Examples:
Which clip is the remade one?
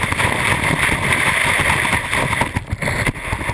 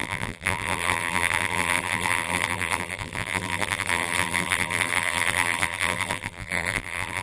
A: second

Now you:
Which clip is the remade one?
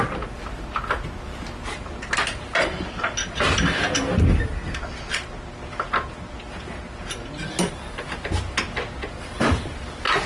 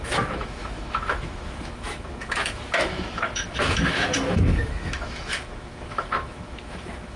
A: second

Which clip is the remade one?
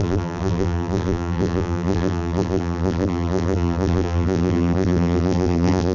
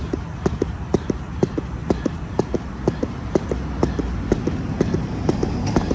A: first